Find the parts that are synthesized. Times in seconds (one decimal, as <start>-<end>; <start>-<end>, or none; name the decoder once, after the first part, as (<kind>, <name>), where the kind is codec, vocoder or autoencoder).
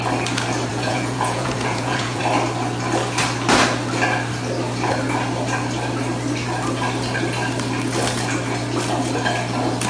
0.7-2.2 (vocoder, Vocos)